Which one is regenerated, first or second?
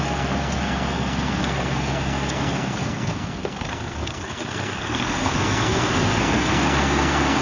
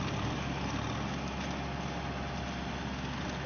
first